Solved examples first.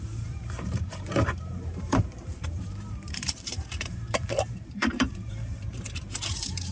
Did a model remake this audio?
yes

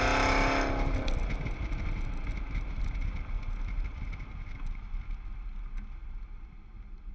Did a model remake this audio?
no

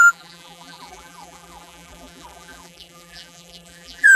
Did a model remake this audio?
yes